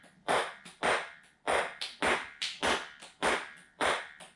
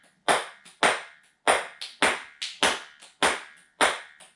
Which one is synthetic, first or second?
first